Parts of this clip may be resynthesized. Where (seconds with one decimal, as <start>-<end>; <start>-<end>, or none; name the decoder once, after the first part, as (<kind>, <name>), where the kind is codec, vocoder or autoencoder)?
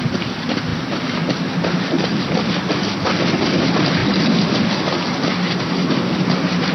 none